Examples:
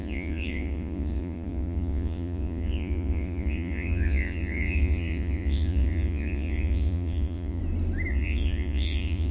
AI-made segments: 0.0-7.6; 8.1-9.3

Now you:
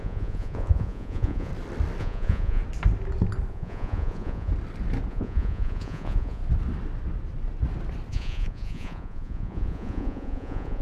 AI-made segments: 0.0-1.5; 2.0-2.6; 3.5-4.5; 5.1-6.4; 8.1-10.8

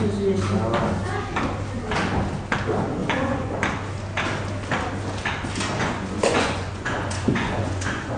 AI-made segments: 3.0-3.5; 5.8-8.2

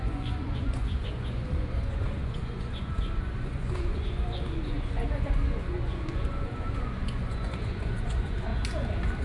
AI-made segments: 0.0-8.5